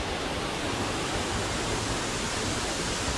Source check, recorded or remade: recorded